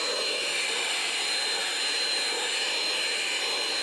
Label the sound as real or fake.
real